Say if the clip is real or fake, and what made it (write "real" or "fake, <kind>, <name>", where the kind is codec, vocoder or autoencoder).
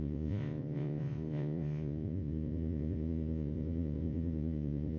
fake, vocoder, Vocos